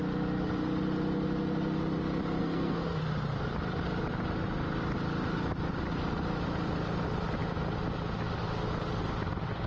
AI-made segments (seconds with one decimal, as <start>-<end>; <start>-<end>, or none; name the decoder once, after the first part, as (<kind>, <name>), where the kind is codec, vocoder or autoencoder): 2.4-3.0 (codec, SNAC)